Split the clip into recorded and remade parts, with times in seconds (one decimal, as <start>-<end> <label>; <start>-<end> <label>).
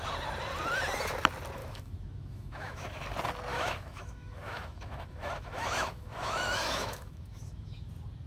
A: 0.0-1.6 recorded; 1.6-3.0 remade; 3.0-3.5 recorded; 3.5-7.9 remade; 7.9-8.3 recorded